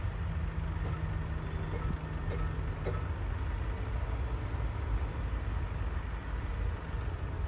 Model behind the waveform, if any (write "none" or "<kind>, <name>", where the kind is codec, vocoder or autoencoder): none